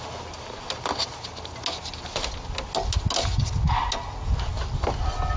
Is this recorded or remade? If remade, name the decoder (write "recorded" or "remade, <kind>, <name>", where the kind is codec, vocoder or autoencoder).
recorded